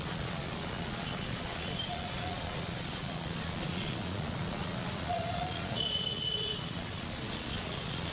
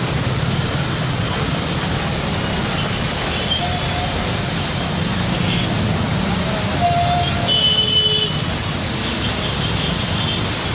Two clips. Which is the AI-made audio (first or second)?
first